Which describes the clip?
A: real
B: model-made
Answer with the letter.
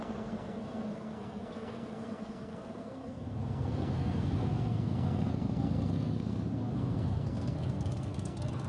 B